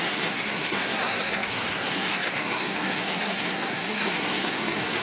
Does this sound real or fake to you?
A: fake